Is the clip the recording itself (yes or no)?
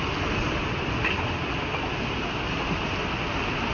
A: yes